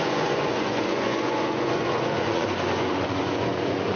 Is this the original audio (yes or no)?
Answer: no